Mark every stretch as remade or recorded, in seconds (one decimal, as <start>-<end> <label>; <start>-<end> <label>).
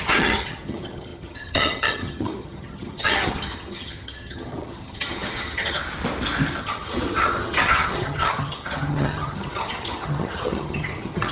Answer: 0.0-5.8 remade; 5.8-6.6 recorded; 6.6-11.3 remade